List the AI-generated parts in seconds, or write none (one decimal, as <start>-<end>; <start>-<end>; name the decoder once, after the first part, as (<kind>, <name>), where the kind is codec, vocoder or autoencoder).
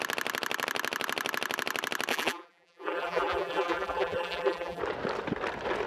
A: 2.1-4.8 (vocoder, BigVGAN v2)